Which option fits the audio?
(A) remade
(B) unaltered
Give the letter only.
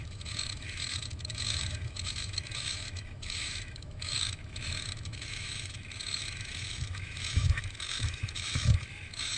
A